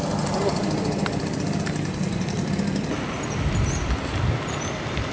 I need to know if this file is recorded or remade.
recorded